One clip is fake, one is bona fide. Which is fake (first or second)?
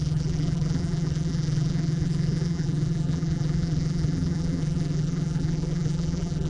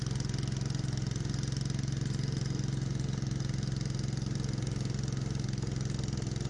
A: first